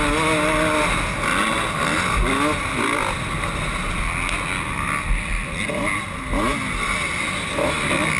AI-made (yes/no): no